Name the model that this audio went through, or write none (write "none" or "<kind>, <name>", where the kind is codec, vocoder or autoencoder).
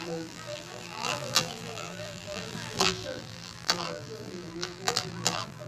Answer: vocoder, BigVGAN v2